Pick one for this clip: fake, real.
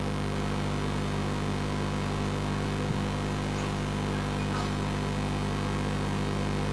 real